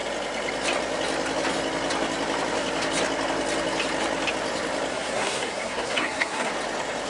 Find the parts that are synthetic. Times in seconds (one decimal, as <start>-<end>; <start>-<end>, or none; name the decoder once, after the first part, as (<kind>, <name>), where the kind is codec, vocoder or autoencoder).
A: 4.9-6.5 (codec, SNAC)